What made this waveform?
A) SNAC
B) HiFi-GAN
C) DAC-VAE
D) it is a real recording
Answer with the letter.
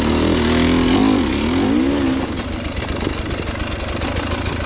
D